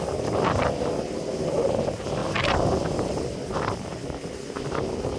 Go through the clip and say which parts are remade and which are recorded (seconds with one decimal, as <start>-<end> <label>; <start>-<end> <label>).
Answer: 0.0-5.2 recorded